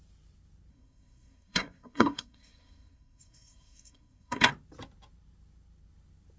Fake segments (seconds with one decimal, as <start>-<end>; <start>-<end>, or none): 0.7-4.5